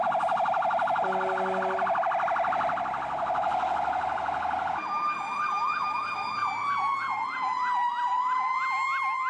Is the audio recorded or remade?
recorded